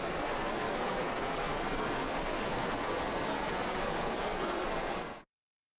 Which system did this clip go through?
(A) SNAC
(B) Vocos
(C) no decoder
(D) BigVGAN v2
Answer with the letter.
A